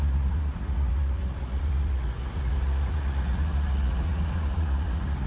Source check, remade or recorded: remade